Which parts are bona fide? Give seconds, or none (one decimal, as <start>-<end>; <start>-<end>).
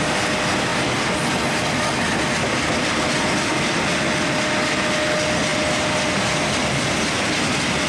0.0-7.9